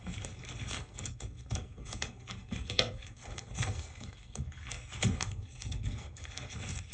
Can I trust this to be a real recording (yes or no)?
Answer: no